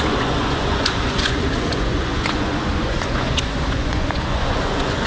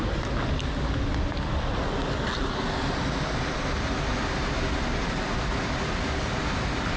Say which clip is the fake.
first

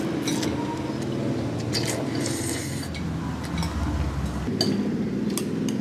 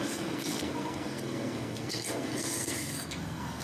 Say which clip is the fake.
second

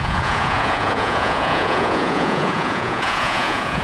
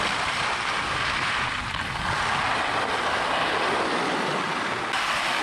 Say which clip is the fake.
first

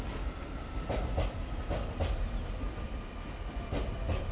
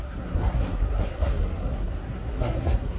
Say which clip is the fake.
second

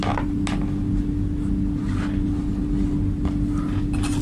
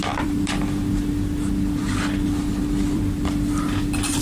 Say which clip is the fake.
second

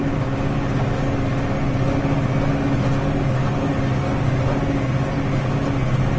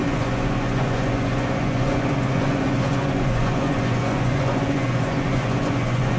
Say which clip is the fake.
second